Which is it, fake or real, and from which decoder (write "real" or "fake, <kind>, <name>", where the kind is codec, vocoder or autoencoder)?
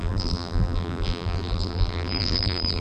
fake, vocoder, BigVGAN v2